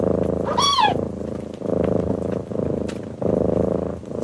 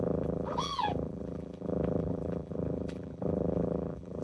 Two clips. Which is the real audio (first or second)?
first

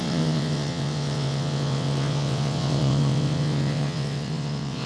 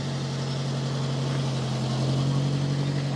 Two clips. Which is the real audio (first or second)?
second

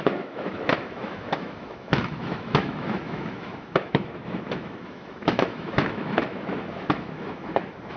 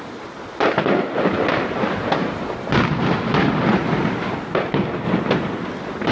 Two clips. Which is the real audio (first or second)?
second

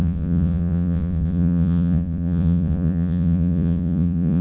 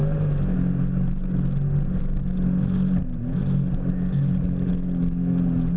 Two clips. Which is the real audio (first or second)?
second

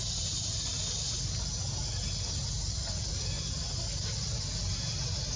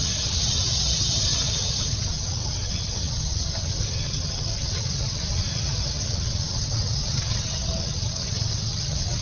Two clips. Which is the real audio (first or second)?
first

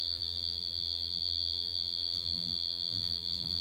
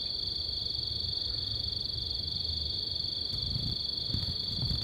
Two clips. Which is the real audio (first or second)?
second